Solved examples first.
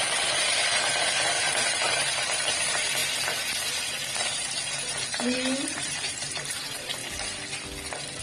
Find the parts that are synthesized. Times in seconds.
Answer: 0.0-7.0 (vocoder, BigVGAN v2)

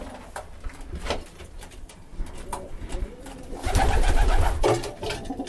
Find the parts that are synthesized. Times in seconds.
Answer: 0.0-5.5 (vocoder, BigVGAN v2)

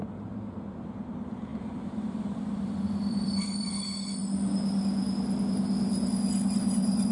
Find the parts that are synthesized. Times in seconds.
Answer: 1.5-3.7 (vocoder, BigVGAN v2)